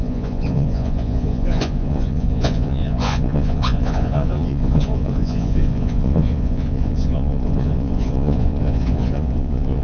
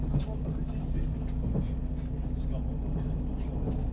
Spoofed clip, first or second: first